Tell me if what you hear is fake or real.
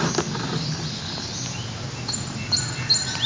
real